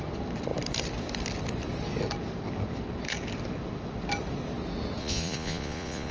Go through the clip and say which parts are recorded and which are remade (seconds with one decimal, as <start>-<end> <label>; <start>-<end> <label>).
0.0-5.0 recorded; 5.0-6.1 remade